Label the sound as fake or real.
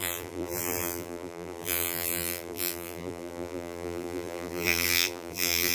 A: fake